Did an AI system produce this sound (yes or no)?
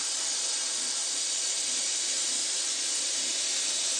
no